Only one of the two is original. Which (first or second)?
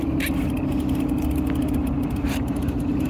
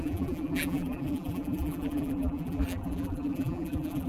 first